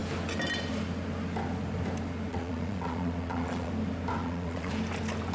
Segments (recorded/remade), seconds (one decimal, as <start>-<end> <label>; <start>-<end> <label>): 0.0-2.3 recorded; 2.3-3.7 remade; 3.7-4.2 recorded; 4.2-4.7 remade; 4.7-5.3 recorded